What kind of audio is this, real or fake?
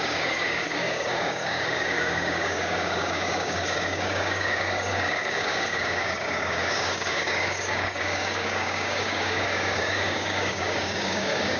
fake